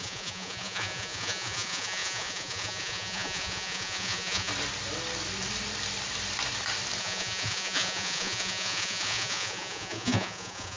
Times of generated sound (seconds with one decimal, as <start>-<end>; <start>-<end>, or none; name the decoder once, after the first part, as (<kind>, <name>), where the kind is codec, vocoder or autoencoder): 0.0-4.5 (vocoder, Vocos); 7.0-10.8